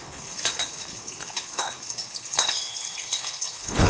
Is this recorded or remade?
remade